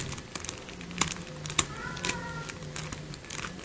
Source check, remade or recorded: recorded